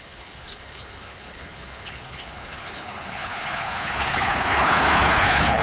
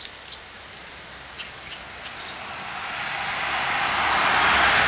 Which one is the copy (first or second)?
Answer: first